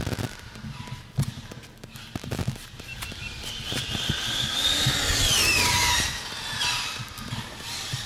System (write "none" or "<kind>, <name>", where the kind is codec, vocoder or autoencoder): none